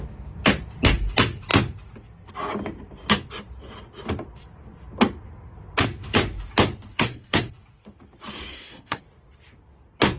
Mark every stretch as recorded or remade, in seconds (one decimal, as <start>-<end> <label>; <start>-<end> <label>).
0.0-6.9 recorded; 6.9-7.5 remade; 7.5-8.5 recorded; 8.5-9.0 remade; 9.0-10.2 recorded